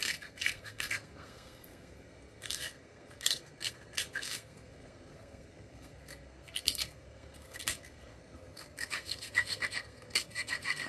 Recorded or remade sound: remade